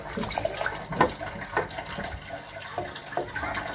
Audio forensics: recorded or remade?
recorded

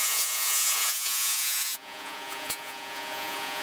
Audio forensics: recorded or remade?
remade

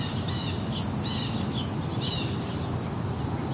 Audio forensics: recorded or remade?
recorded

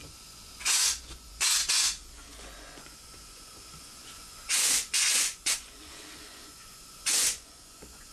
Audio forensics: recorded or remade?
remade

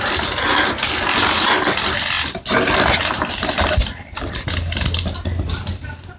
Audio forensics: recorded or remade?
recorded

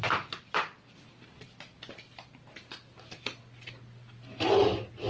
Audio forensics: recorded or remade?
recorded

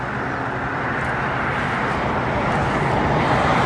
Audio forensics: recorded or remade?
recorded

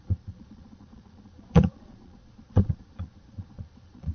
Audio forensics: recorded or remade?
remade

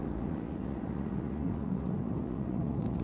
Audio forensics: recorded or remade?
remade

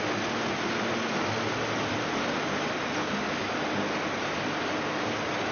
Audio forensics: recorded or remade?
recorded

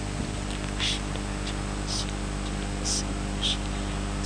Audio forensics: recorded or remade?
recorded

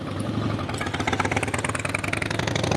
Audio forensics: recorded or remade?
recorded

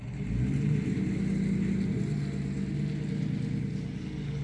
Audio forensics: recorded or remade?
recorded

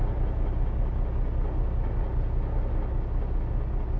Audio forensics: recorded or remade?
recorded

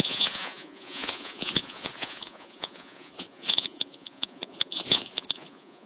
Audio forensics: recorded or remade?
remade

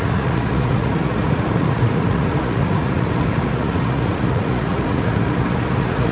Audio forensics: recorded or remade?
remade